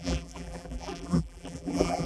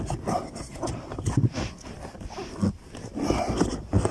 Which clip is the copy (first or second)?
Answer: first